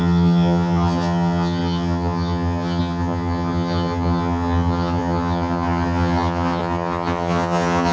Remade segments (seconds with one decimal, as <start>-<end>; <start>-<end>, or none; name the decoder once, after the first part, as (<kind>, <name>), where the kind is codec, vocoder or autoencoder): 0.0-7.9 (vocoder, HiFi-GAN)